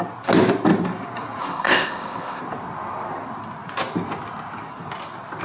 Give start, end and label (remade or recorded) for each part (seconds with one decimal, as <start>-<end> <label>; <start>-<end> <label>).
0.0-1.4 recorded; 1.4-2.4 remade; 2.4-5.4 recorded